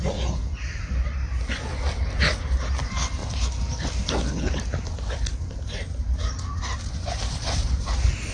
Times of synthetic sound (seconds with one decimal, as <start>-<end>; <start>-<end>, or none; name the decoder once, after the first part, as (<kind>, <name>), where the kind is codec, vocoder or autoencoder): 0.0-0.4 (vocoder, BigVGAN v2); 1.0-3.2; 6.0-8.3